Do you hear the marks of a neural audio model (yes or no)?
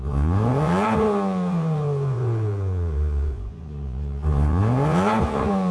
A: yes